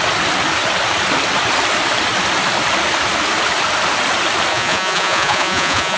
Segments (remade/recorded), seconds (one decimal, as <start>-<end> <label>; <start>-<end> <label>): 0.0-4.5 recorded; 4.5-6.0 remade